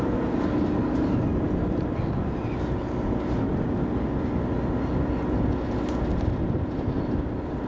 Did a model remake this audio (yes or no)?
no